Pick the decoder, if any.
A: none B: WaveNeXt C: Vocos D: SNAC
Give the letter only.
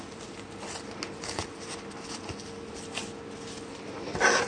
A